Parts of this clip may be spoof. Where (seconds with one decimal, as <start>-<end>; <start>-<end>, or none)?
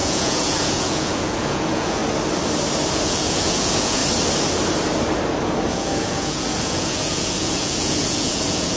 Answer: 0.0-2.0; 2.9-4.0; 5.7-8.8